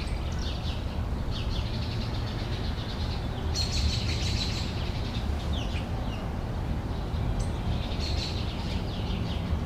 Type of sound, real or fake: real